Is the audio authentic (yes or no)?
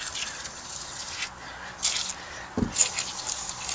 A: yes